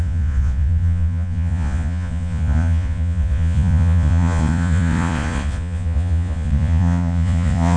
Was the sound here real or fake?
fake